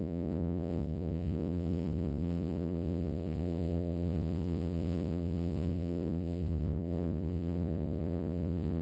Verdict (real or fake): fake